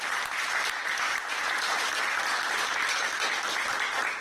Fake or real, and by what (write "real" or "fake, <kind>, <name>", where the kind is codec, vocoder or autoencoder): real